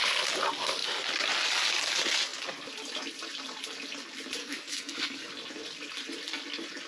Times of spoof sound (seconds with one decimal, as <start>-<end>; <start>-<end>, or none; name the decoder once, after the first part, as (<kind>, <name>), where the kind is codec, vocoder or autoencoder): 4.4-5.3 (codec, SNAC)